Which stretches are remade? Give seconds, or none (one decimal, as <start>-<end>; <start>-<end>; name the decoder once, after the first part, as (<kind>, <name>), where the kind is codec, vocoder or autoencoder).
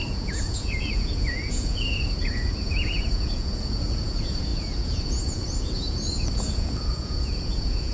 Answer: 0.0-7.9 (vocoder, Vocos)